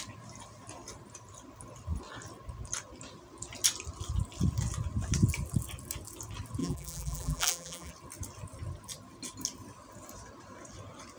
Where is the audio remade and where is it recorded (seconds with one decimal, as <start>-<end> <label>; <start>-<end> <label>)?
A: 0.0-6.6 recorded; 6.6-7.9 remade; 7.9-11.2 recorded